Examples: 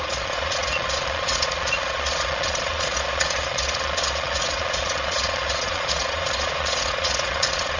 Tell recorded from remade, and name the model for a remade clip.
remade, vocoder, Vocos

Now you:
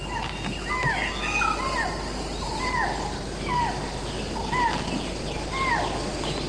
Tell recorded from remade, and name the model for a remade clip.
recorded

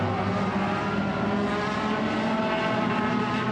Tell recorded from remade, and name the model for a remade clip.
recorded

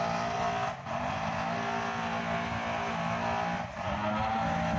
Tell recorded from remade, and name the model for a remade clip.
recorded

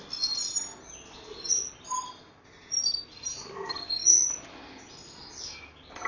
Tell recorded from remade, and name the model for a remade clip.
recorded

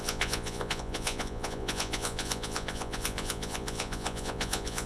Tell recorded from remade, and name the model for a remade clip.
remade, vocoder, Vocos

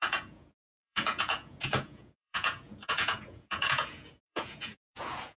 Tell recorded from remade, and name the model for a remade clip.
remade, vocoder, Vocos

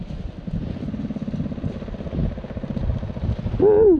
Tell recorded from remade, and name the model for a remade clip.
recorded